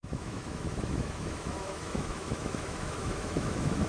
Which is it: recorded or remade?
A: remade